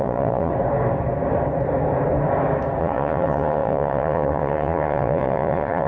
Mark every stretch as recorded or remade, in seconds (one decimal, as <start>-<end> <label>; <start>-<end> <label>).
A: 0.0-0.5 remade; 0.5-2.8 recorded; 2.8-5.9 remade